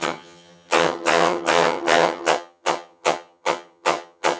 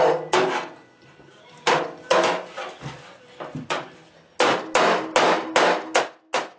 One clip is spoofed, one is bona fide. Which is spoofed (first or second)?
first